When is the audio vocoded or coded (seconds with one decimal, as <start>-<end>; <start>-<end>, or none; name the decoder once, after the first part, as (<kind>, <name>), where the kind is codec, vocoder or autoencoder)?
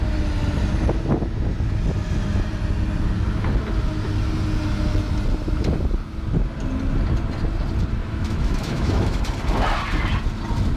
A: 8.0-9.2 (autoencoder, DAC-VAE)